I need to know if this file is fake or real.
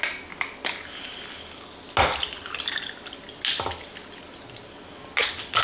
real